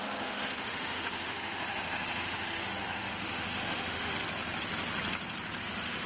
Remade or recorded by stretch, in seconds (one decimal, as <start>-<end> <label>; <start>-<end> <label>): 0.0-4.1 remade; 4.1-5.6 recorded; 5.6-6.1 remade